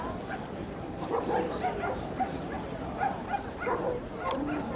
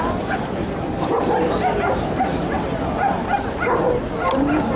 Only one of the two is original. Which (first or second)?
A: second